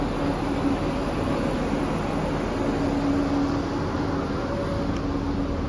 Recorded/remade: recorded